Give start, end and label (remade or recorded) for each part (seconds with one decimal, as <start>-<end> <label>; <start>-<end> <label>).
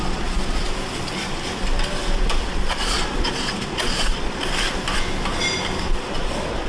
0.0-0.7 remade; 0.7-2.4 recorded; 2.4-4.5 remade; 4.5-5.8 recorded; 5.8-6.7 remade